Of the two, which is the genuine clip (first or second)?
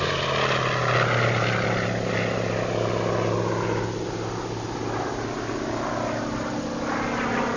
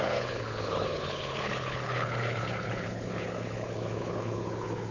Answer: first